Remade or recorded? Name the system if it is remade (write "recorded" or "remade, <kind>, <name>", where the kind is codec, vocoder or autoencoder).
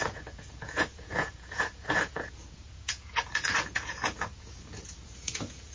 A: remade, vocoder, Vocos